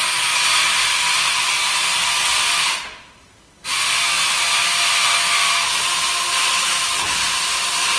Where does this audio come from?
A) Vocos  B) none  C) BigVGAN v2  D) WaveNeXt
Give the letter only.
B